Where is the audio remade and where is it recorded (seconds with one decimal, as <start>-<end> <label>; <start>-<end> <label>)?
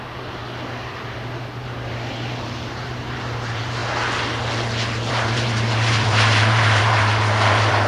0.0-0.4 remade; 0.4-1.0 recorded; 1.0-3.8 remade; 3.8-5.1 recorded; 5.1-7.9 remade